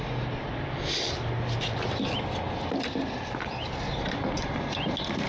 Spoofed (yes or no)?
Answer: no